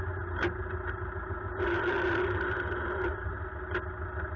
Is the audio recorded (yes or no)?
yes